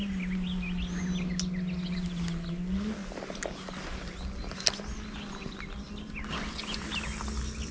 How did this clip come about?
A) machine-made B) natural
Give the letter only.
B